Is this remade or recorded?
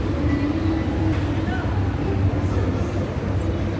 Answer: recorded